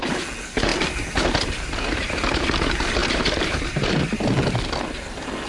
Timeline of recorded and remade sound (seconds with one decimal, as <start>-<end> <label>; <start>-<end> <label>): 0.0-3.0 recorded; 3.0-4.0 remade; 4.0-5.5 recorded